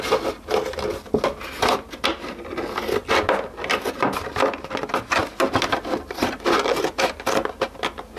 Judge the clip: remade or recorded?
recorded